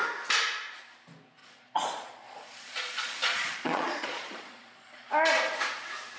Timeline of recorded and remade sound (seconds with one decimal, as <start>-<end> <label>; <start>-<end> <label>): 0.0-1.4 recorded; 1.4-5.1 remade; 5.1-6.2 recorded